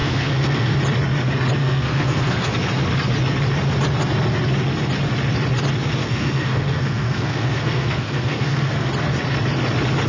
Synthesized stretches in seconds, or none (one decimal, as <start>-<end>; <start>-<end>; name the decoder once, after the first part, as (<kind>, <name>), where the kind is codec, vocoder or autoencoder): 0.0-0.8 (codec, SNAC); 1.6-2.5; 6.0-8.9